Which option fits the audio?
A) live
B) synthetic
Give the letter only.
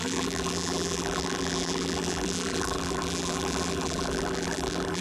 B